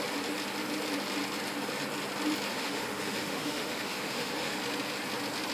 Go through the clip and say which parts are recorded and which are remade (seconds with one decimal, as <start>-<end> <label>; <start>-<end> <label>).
0.0-2.5 recorded; 2.5-4.6 remade; 4.6-5.5 recorded